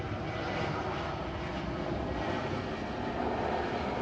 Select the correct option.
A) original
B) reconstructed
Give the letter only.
A